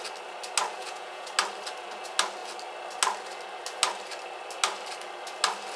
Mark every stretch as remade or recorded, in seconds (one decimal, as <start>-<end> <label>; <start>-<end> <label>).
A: 0.0-0.8 recorded; 0.8-1.3 remade; 1.3-5.8 recorded